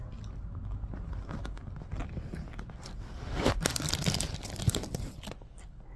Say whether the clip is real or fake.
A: real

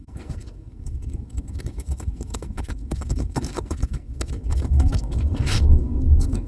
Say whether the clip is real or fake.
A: fake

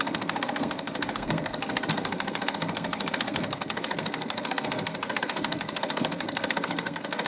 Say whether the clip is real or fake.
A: fake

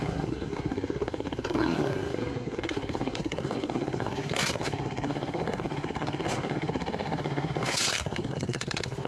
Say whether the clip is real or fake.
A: fake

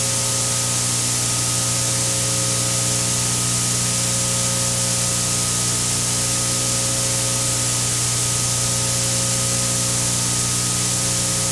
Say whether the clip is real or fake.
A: real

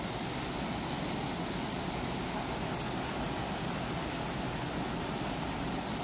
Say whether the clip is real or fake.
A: real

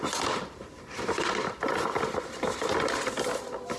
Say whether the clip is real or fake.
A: real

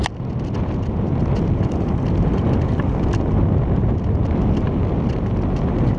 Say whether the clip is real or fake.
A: real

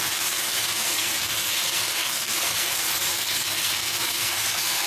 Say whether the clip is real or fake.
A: fake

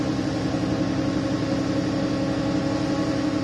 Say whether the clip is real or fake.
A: real